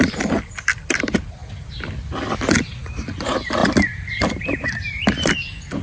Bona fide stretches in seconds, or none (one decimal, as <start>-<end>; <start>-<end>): 0.0-3.6; 4.4-5.8